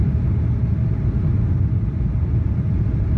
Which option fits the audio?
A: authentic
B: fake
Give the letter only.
A